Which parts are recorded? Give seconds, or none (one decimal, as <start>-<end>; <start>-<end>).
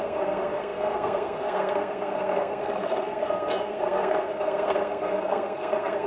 none